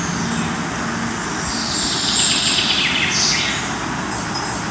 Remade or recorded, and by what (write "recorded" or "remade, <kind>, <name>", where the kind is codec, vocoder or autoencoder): recorded